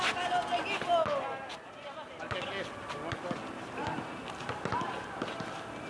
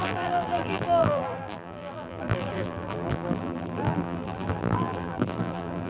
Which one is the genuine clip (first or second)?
first